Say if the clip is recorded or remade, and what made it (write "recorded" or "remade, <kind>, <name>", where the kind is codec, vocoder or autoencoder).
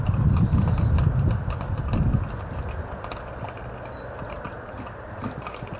recorded